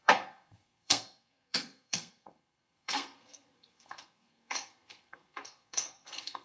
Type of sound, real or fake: fake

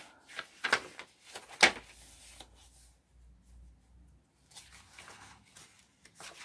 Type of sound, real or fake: real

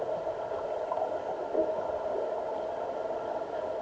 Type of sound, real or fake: real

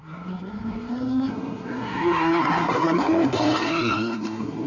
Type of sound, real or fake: fake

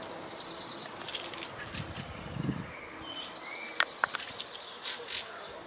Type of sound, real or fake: real